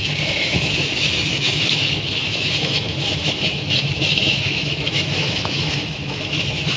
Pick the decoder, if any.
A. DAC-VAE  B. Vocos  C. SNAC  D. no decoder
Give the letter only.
A